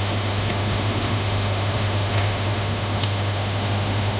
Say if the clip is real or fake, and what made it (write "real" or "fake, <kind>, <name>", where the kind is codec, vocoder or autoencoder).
fake, autoencoder, DAC-VAE